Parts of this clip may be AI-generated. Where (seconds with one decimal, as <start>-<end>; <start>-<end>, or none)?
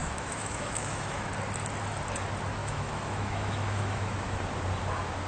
0.0-1.3; 2.6-4.4